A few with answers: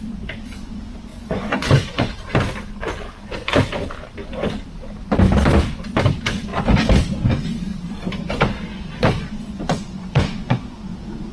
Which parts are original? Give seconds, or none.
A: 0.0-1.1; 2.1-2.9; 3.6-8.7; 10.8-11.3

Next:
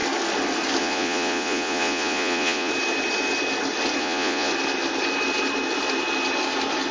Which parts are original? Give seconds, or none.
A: 0.0-0.8; 2.7-4.0; 4.5-6.9

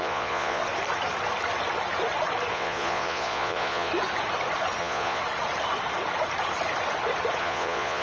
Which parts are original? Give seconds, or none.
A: 0.6-2.5; 3.9-4.8; 5.2-7.4